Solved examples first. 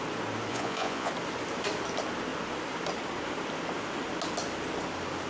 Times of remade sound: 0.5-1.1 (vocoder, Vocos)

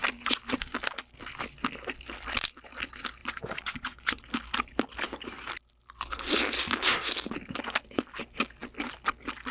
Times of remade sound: 3.2-4.2 (vocoder, Vocos)

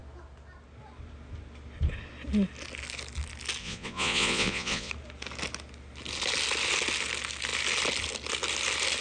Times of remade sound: 3.6-4.9 (vocoder, Vocos)

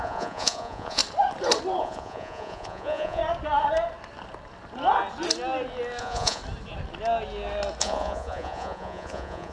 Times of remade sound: 0.0-1.0 (vocoder, Vocos); 1.8-3.2; 6.0-6.4; 7.8-9.5

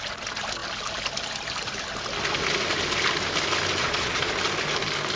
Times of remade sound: 3.8-4.3 (vocoder, Vocos)

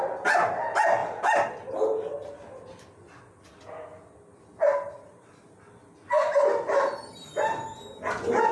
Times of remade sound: none

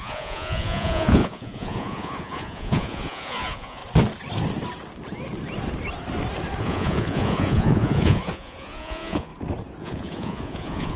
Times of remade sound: 0.0-3.8 (vocoder, Vocos); 6.6-9.3; 9.8-11.0

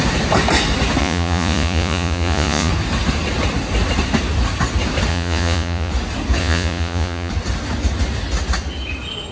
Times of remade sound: 1.0-2.7 (vocoder, Vocos); 5.1-5.9; 6.4-7.3